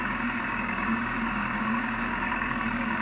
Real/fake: fake